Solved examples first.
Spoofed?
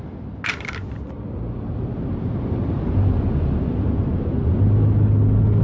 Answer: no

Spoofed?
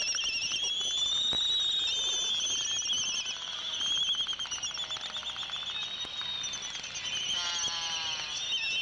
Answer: no